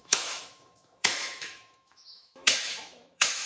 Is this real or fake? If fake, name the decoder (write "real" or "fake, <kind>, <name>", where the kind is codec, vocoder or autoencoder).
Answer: fake, autoencoder, DAC-VAE